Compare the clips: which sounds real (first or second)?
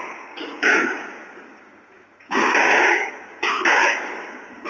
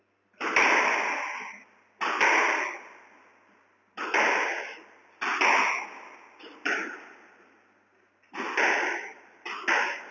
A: second